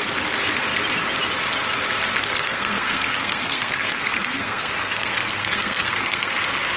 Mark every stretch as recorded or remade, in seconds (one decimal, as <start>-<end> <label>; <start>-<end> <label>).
0.0-2.2 recorded; 2.2-6.3 remade; 6.3-6.8 recorded